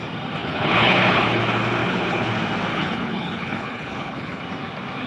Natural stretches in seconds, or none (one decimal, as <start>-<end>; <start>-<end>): 0.0-0.4; 1.4-1.8; 2.3-2.7; 4.4-5.1